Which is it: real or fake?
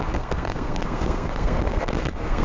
fake